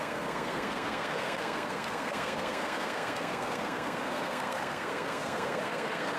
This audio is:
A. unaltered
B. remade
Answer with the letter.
B